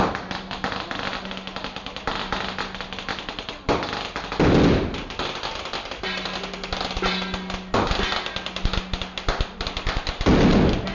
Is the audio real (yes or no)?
yes